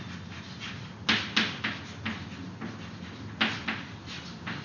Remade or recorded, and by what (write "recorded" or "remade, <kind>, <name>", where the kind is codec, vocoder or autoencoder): recorded